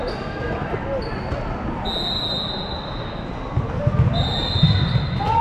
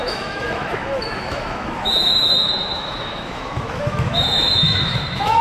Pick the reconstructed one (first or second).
second